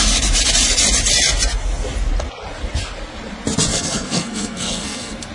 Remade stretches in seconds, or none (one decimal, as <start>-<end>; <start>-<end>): 3.7-5.3